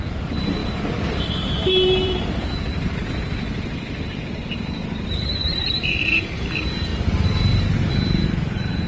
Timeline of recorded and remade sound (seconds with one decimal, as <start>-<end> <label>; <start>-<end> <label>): 0.0-3.0 remade; 3.0-3.5 recorded; 3.5-8.9 remade